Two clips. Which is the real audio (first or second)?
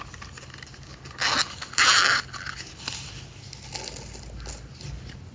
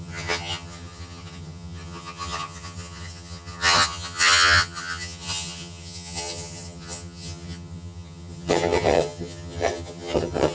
first